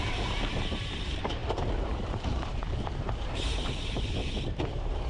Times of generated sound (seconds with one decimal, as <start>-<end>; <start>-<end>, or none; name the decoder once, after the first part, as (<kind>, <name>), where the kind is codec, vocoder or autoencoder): 0.0-5.1 (vocoder, BigVGAN v2)